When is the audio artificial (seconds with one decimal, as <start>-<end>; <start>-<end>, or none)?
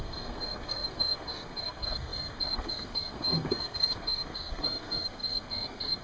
0.0-6.0